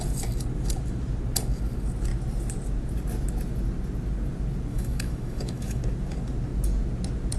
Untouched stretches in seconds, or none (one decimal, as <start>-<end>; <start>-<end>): 0.0-4.7; 5.8-7.4